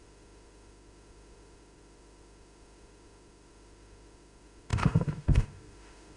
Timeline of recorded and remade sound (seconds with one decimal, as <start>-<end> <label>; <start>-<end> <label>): 0.0-6.2 remade